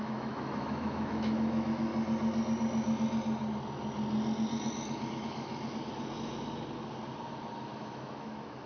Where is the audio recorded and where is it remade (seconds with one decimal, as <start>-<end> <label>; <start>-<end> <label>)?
0.0-1.9 remade; 1.9-5.1 recorded; 5.1-5.5 remade; 5.5-7.7 recorded; 7.7-8.7 remade